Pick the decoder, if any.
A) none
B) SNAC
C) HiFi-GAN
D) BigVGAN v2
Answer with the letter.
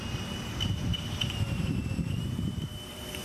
D